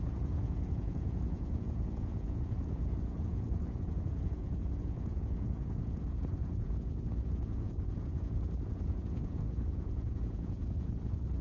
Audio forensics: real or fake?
fake